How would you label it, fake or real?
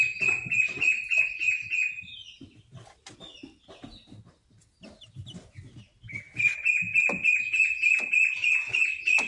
real